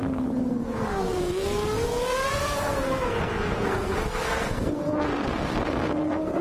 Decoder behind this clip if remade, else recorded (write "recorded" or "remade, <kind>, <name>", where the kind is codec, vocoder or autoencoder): remade, codec, SNAC